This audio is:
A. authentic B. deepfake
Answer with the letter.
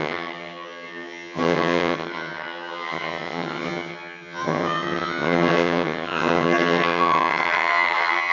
B